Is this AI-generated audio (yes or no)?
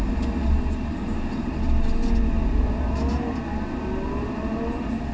no